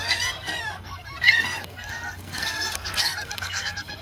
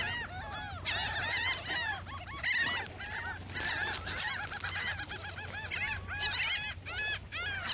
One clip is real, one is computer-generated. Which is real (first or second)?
second